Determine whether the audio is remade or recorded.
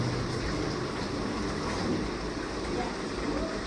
recorded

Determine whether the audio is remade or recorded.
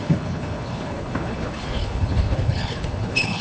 remade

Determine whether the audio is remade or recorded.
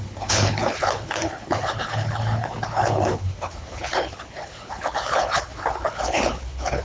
remade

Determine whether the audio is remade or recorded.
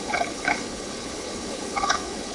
remade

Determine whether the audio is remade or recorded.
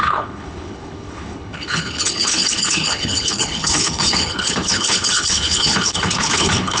remade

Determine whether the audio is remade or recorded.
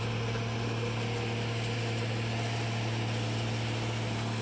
recorded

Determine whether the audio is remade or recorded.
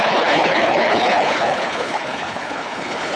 remade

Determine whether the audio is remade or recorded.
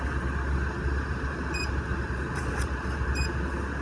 recorded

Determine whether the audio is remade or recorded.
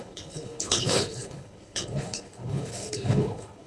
remade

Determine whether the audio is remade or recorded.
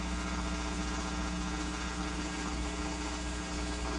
remade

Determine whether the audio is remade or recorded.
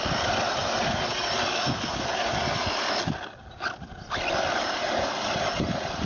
recorded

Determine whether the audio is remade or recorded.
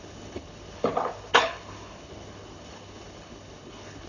remade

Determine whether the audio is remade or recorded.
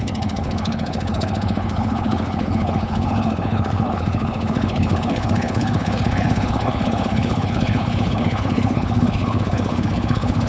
remade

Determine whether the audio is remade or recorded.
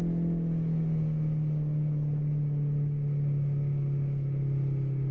recorded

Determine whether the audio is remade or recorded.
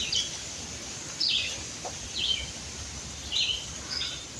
recorded